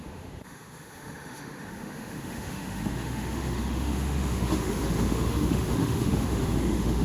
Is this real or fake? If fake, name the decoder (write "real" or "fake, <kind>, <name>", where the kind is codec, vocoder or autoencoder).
fake, autoencoder, DAC-VAE